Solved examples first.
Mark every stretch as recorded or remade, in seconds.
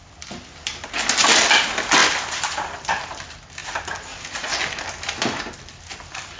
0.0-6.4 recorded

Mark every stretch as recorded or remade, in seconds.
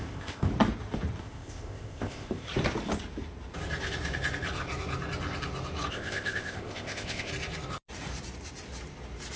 0.0-0.5 remade; 0.5-1.2 recorded; 1.2-2.5 remade; 2.5-5.9 recorded; 5.9-7.3 remade; 7.3-9.4 recorded